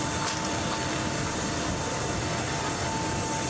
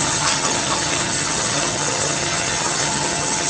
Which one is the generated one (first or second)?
second